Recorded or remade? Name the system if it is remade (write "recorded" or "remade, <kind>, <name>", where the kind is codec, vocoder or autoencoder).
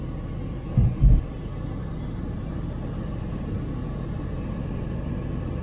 recorded